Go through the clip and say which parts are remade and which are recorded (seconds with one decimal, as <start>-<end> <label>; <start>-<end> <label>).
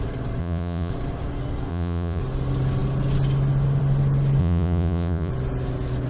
0.0-0.4 recorded; 0.4-0.9 remade; 0.9-1.7 recorded; 1.7-2.2 remade; 2.2-4.4 recorded; 4.4-5.3 remade; 5.3-6.1 recorded